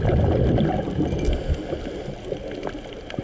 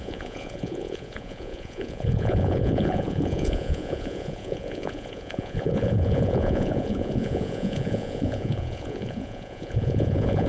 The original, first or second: first